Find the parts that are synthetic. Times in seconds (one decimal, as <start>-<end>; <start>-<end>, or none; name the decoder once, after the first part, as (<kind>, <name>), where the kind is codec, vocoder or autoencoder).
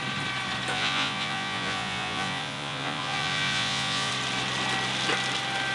0.7-4.1 (vocoder, Vocos)